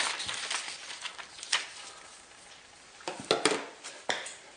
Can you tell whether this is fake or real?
real